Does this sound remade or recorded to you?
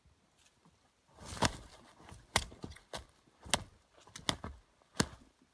recorded